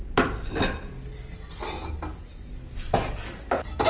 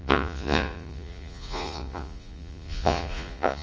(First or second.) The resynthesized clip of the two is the second